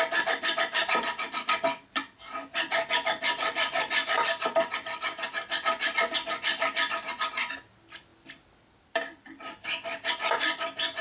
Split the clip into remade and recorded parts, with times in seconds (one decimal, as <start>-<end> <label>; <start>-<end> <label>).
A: 0.0-11.0 recorded